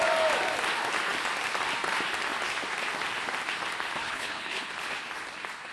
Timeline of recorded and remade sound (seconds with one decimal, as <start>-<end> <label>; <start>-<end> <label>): 0.0-4.0 recorded; 4.0-4.7 remade; 4.7-5.7 recorded